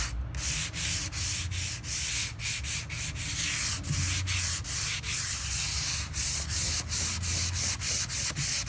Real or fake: real